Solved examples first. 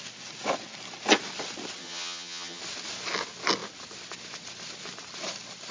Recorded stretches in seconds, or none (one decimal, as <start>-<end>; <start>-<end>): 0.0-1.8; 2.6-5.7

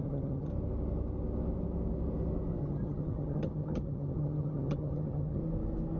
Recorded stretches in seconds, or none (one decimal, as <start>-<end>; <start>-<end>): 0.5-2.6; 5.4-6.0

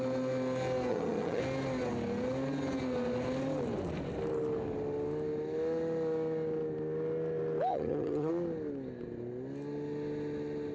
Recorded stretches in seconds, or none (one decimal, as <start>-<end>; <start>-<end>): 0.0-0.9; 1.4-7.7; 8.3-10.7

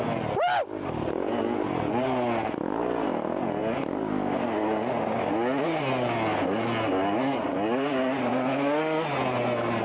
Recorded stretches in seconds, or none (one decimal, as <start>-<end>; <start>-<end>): 0.0-9.8